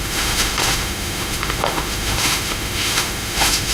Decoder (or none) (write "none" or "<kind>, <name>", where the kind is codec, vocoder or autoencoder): autoencoder, DAC-VAE